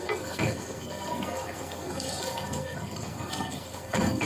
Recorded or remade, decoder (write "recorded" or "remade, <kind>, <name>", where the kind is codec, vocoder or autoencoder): remade, codec, SNAC